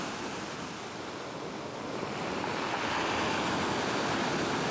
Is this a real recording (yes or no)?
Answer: yes